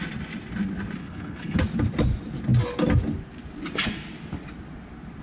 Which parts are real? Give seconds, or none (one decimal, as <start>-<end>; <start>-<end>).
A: 0.0-1.0; 1.6-5.2